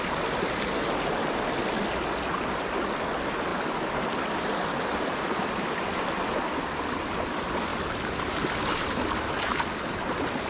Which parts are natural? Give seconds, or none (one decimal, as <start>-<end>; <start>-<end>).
0.0-10.5